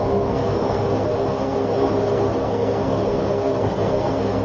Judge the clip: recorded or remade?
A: remade